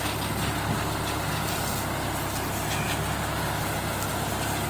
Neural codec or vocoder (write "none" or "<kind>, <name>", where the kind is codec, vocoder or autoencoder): none